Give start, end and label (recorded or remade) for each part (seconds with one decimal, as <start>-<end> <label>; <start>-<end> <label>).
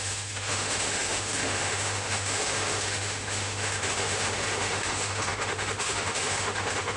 0.0-7.0 remade